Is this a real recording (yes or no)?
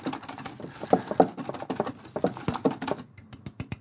yes